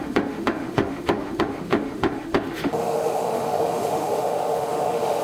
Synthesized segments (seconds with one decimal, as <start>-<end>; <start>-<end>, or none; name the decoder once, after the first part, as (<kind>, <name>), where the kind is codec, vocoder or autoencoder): 0.0-5.2 (autoencoder, DAC-VAE)